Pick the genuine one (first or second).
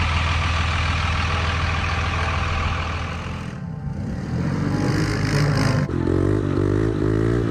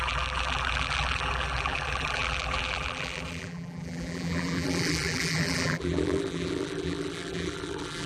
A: first